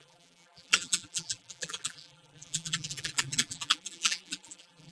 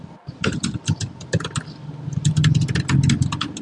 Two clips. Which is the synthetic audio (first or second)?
first